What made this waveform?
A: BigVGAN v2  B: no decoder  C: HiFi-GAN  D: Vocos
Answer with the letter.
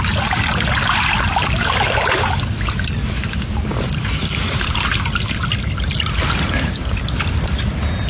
B